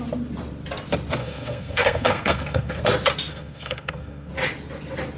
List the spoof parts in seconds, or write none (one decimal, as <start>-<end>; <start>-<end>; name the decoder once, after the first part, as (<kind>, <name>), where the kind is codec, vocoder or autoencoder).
1.2-2.8 (codec, SNAC); 3.3-4.3

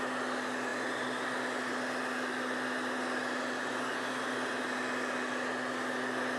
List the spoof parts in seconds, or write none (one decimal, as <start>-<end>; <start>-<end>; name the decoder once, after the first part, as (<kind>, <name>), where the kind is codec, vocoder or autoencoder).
none

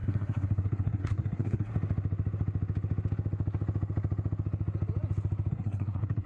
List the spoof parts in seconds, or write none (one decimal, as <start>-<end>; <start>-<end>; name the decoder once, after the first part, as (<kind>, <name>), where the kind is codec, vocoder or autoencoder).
0.0-1.7 (codec, SNAC); 5.5-6.3

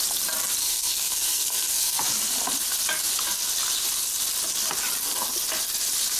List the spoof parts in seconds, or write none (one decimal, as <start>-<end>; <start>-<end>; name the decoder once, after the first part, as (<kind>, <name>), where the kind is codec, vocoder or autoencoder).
0.6-2.0 (codec, SNAC)

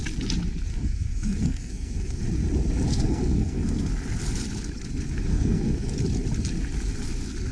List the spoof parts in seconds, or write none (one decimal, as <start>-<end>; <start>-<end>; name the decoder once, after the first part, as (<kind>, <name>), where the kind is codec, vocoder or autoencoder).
0.7-2.2 (codec, SNAC); 2.9-3.9; 5.3-5.9

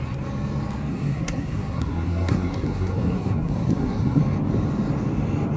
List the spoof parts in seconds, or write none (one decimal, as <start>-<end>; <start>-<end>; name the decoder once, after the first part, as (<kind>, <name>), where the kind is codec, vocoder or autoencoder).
0.9-4.2 (codec, SNAC)

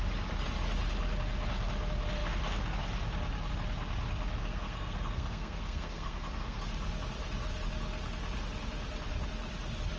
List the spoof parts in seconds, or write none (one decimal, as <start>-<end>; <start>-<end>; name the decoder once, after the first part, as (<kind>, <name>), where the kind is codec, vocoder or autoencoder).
4.4-6.6 (codec, SNAC)